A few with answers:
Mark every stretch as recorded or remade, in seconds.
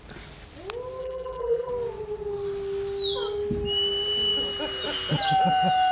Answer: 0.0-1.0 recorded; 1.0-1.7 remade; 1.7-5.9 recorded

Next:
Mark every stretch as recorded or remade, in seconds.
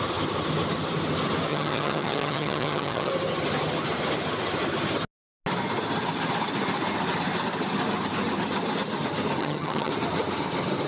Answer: 0.0-1.5 recorded; 1.5-3.1 remade; 3.1-9.4 recorded; 9.4-9.9 remade; 9.9-10.9 recorded